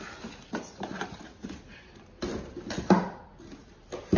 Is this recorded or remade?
recorded